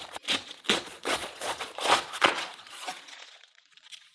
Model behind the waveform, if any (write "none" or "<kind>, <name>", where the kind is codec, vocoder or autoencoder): vocoder, Vocos